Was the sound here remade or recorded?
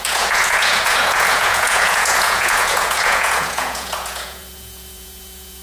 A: remade